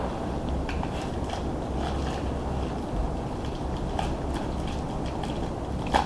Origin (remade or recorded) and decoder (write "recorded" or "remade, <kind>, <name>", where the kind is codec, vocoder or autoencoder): recorded